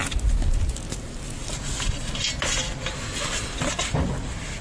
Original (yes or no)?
yes